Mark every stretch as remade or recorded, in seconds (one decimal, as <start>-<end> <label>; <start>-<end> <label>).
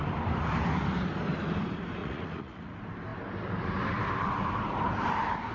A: 0.0-2.0 recorded; 2.0-2.7 remade; 2.7-5.5 recorded